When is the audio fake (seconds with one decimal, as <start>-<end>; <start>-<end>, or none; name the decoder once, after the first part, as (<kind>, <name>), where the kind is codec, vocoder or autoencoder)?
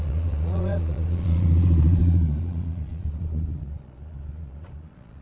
0.0-5.2 (vocoder, Vocos)